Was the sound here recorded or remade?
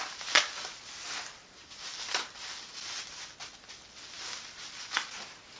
recorded